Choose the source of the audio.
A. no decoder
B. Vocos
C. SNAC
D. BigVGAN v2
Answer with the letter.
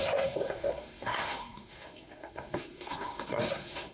C